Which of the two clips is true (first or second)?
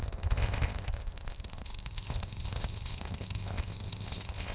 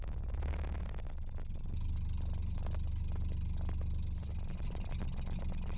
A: second